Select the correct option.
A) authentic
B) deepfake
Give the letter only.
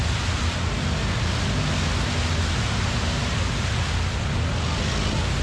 A